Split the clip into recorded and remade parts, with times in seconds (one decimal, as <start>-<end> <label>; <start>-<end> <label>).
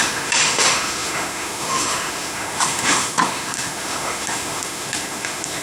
0.0-5.6 remade